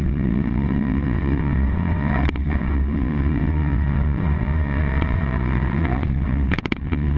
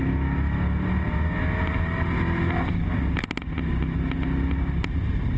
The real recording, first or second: second